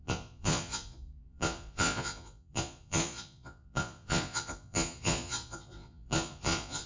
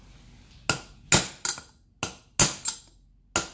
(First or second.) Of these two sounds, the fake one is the first